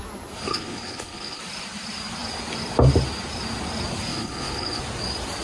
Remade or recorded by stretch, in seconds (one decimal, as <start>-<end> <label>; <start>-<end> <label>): 0.0-0.5 recorded; 0.5-1.4 remade; 1.4-4.1 recorded; 4.1-4.8 remade; 4.8-5.4 recorded